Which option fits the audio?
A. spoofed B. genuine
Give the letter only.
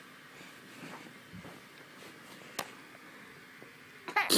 B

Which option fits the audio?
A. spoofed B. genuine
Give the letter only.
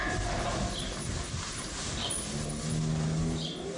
B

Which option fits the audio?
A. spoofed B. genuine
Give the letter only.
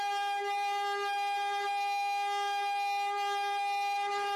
B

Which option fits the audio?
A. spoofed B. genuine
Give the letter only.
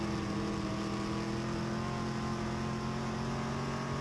B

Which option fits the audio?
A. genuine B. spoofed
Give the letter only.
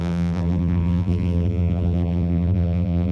B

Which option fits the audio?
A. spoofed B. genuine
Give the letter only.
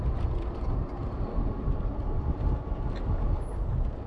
B